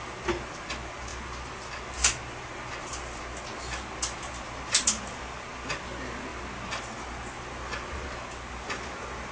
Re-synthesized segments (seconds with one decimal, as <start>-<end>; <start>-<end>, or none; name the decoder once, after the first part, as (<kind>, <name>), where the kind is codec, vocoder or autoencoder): none